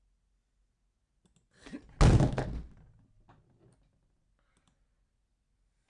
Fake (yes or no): no